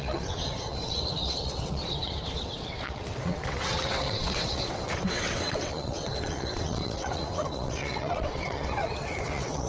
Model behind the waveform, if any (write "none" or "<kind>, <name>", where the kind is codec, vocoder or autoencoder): vocoder, WaveNeXt